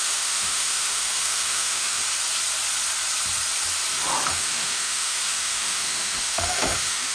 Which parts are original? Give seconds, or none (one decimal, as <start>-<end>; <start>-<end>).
2.0-4.3